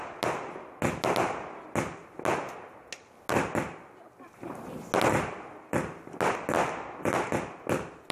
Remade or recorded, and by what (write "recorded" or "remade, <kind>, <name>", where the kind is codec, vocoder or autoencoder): recorded